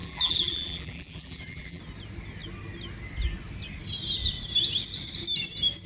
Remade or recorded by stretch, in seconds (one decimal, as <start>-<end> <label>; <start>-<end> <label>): 0.0-1.8 remade; 1.8-5.9 recorded